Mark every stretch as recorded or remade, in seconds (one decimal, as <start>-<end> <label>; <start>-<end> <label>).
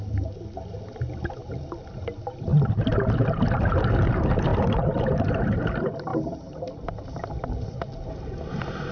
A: 0.0-8.9 recorded